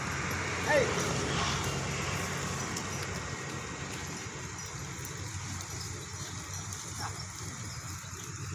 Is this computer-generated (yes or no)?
no